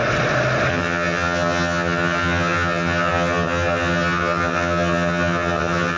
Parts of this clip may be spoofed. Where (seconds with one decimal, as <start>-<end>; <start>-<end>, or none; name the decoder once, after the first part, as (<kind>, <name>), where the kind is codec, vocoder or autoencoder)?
0.7-6.0 (vocoder, HiFi-GAN)